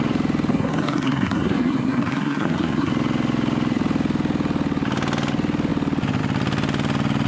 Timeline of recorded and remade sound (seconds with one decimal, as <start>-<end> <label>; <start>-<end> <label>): 0.0-0.5 recorded; 0.5-2.9 remade; 2.9-7.3 recorded